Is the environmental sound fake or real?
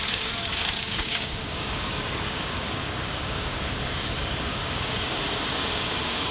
fake